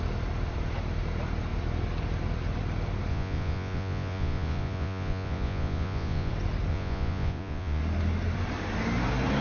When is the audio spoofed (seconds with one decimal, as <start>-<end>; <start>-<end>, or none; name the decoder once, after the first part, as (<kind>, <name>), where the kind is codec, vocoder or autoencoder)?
3.1-6.3 (vocoder, Vocos); 6.7-7.8